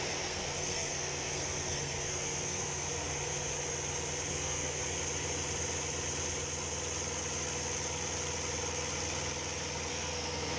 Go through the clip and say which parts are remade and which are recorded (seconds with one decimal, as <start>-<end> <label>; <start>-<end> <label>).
0.0-3.5 remade; 3.5-4.3 recorded; 4.3-4.8 remade; 4.8-9.9 recorded; 9.9-10.6 remade